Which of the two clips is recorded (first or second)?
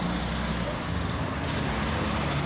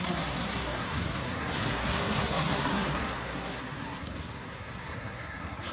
first